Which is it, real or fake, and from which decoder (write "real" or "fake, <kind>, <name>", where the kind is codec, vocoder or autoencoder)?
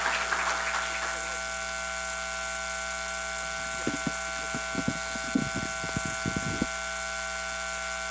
real